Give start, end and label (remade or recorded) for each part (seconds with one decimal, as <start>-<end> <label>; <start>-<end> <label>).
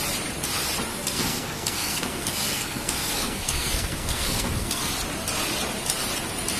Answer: 0.0-0.9 recorded; 0.9-4.9 remade; 4.9-6.6 recorded